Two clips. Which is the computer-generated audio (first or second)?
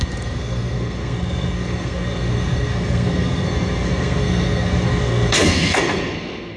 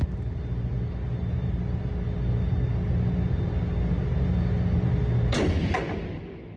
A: first